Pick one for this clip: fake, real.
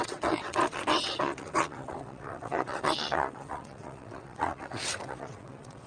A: fake